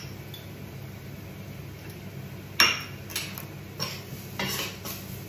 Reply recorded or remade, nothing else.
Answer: recorded